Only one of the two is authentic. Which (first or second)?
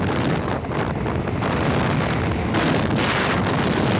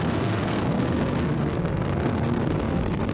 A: first